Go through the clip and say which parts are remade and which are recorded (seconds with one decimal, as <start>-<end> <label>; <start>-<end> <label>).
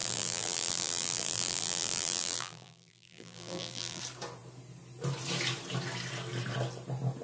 0.0-4.0 remade; 4.0-7.2 recorded